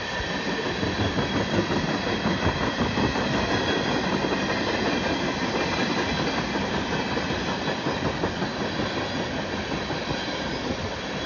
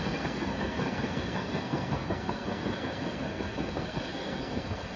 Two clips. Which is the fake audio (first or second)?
second